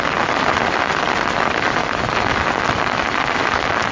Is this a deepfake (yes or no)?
no